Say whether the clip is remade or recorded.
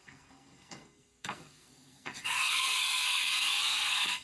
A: remade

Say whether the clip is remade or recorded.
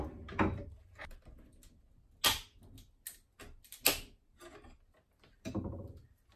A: recorded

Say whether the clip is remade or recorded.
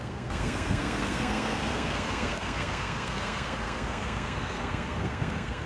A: remade